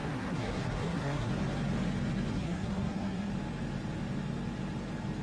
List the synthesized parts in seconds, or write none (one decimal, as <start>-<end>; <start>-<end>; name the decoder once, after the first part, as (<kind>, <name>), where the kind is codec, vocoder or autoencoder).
0.0-1.3 (codec, SNAC); 2.3-3.3